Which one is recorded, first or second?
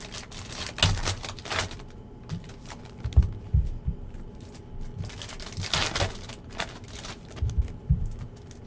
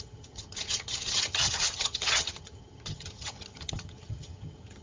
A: first